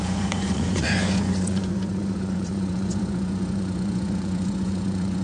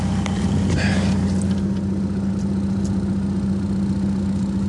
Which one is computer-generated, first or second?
first